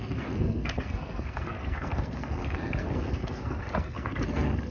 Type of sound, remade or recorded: remade